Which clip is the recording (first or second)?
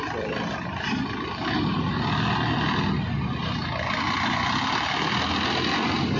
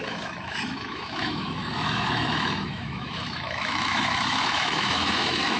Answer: first